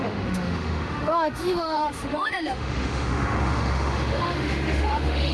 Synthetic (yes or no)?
yes